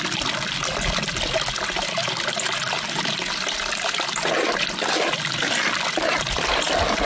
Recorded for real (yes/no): yes